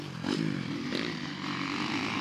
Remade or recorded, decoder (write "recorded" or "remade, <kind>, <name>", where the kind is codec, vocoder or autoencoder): remade, vocoder, BigVGAN v2